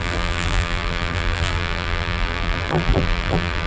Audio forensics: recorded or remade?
remade